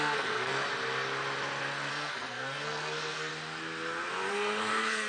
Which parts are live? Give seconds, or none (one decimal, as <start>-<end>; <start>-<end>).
0.5-1.9; 3.3-4.3